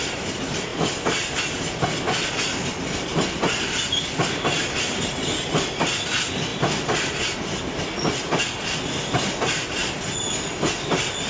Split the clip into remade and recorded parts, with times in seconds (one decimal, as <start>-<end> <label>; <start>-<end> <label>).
0.0-11.3 recorded